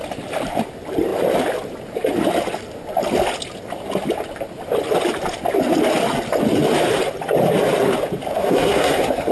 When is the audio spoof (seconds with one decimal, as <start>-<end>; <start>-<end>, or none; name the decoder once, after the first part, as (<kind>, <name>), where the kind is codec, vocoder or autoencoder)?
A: 8.3-9.3 (codec, SNAC)